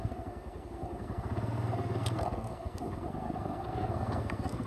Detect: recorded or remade remade